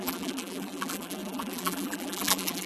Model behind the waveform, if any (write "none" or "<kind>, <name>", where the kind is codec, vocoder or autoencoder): vocoder, BigVGAN v2